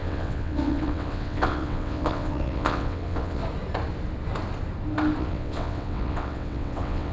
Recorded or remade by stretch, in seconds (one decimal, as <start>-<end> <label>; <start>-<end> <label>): 0.0-3.4 remade; 3.4-5.2 recorded; 5.2-7.1 remade